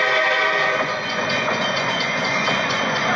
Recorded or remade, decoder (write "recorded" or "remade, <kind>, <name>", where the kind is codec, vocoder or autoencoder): remade, vocoder, Vocos